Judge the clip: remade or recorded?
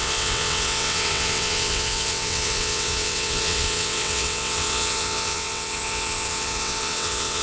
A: remade